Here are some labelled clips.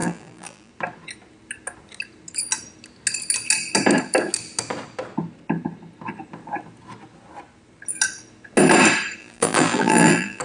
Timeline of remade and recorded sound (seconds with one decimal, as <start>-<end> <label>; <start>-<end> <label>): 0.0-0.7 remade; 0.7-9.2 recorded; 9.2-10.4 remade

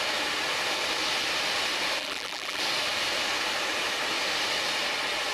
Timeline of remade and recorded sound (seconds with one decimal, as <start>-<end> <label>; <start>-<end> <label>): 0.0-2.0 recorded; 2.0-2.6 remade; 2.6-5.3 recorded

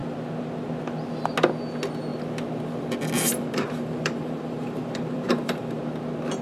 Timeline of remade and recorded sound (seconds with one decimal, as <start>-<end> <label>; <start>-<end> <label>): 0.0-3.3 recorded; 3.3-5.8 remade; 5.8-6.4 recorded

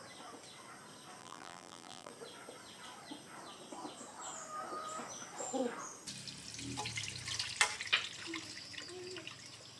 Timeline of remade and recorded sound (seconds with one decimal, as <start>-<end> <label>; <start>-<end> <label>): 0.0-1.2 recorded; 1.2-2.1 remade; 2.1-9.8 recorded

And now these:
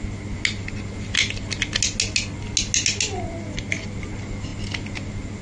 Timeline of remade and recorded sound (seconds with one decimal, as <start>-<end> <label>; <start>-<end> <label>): 0.0-5.4 recorded

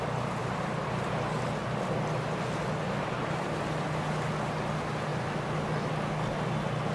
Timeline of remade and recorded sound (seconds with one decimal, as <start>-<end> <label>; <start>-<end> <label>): 0.0-6.9 recorded